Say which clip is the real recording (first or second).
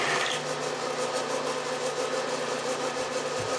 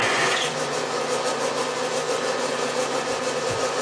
first